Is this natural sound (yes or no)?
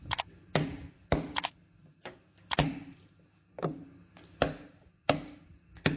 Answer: yes